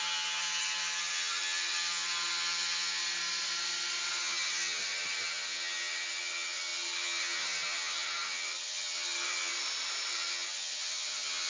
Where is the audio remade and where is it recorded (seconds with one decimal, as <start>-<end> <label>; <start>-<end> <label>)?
0.0-3.0 remade; 3.0-4.1 recorded; 4.1-9.5 remade; 9.5-10.1 recorded; 10.1-11.5 remade